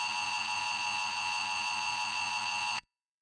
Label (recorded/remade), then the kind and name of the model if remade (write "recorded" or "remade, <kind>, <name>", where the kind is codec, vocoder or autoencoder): remade, vocoder, Vocos